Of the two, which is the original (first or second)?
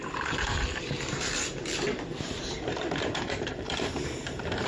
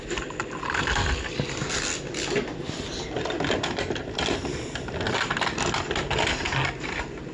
second